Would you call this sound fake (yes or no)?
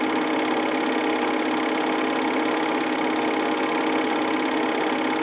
no